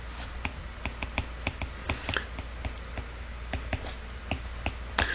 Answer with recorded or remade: recorded